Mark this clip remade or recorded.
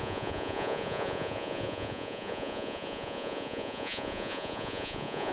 remade